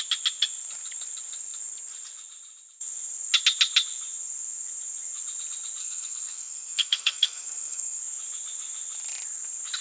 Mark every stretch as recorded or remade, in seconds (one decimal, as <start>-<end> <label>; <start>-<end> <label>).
0.0-5.8 recorded; 5.8-8.0 remade; 8.0-9.8 recorded